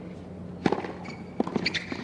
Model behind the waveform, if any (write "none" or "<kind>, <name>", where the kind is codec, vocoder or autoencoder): none